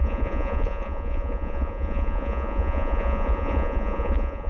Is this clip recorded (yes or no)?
no